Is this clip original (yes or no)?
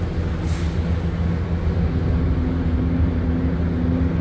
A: yes